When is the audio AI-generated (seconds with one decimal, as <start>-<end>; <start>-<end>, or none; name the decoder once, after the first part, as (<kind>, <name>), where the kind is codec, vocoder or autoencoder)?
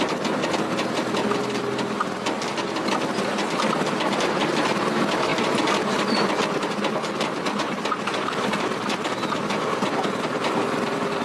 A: none